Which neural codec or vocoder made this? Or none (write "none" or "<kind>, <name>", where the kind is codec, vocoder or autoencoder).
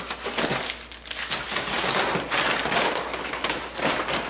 none